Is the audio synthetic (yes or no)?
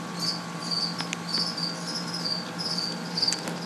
no